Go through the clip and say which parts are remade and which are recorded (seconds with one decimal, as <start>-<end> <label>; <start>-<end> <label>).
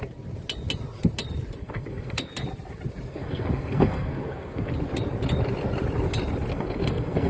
0.0-1.6 recorded; 1.6-2.3 remade; 2.3-3.1 recorded; 3.1-4.7 remade; 4.7-6.5 recorded; 6.5-7.3 remade